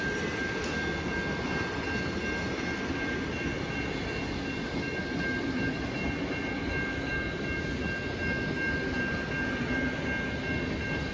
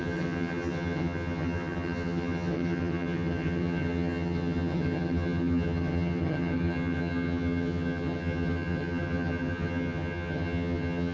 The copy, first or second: second